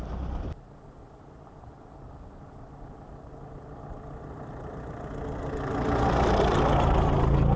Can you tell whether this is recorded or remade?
recorded